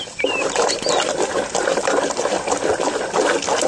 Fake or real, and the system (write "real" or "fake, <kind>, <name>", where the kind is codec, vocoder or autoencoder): real